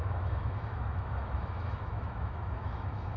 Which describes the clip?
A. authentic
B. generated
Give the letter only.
B